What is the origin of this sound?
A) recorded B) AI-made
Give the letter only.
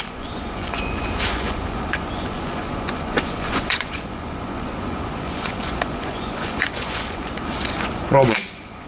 B